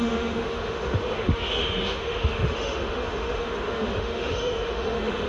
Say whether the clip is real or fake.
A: fake